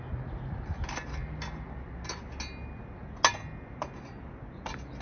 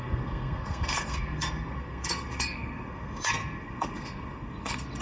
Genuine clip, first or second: first